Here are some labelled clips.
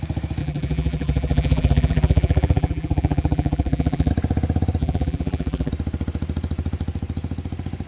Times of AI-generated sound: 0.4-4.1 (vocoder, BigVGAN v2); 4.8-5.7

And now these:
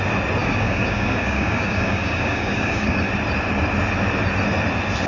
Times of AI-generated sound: 0.4-3.1 (codec, DAC)